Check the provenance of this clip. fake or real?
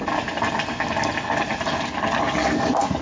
real